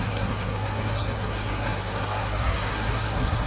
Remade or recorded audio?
remade